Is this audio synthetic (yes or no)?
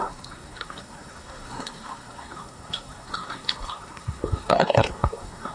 yes